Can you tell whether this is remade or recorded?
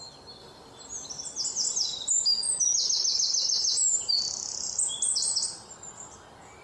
recorded